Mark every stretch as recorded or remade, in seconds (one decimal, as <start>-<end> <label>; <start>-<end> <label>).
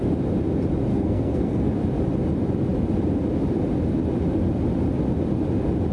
0.0-0.9 recorded; 0.9-1.7 remade; 1.7-5.9 recorded